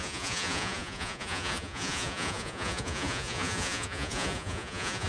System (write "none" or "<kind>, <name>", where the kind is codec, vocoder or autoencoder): vocoder, Vocos